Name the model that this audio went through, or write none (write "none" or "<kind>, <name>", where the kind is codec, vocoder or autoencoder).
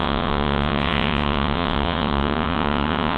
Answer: vocoder, WaveNeXt